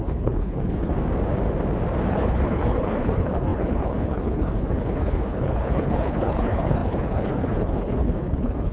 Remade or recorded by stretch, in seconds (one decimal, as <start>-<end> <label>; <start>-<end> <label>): 0.0-0.9 remade; 0.9-2.1 recorded; 2.1-8.7 remade

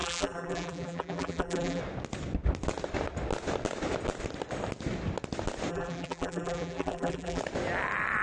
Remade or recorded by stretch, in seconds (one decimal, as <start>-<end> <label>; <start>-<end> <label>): 0.0-1.8 remade; 1.8-5.7 recorded; 5.7-7.4 remade; 7.4-8.2 recorded

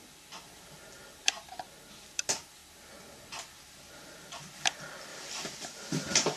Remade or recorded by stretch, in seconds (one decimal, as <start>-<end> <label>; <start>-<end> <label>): 0.0-5.1 recorded; 5.1-6.4 remade

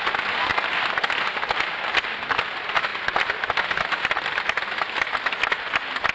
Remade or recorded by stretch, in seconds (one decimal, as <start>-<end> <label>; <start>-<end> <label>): 0.0-6.1 recorded